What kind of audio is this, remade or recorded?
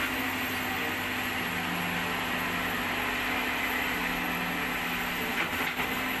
recorded